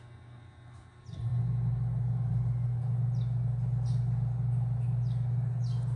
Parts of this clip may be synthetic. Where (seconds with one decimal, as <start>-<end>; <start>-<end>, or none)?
none